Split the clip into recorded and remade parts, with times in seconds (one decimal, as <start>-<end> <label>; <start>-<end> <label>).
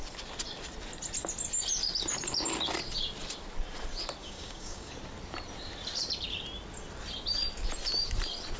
0.0-4.2 recorded; 4.2-4.9 remade; 4.9-8.6 recorded